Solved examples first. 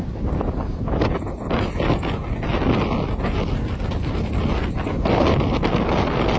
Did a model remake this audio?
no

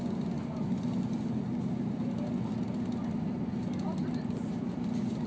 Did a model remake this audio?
no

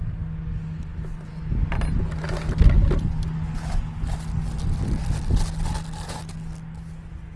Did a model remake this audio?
no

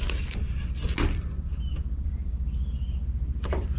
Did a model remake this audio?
no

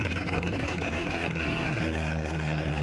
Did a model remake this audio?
yes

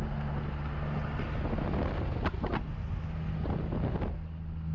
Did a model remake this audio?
no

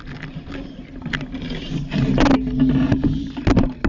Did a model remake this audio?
no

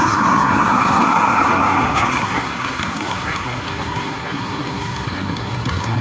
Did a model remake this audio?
yes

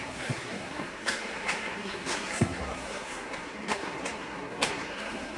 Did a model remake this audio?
yes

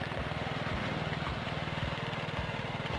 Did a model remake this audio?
no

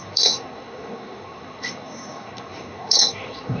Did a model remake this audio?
yes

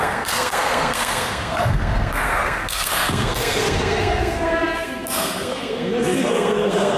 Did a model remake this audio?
yes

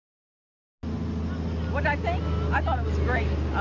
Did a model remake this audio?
no